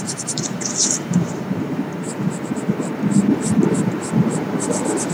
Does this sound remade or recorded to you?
remade